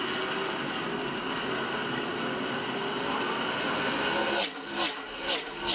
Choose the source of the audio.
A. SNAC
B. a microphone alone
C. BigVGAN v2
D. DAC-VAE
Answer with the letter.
B